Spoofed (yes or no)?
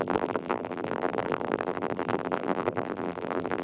yes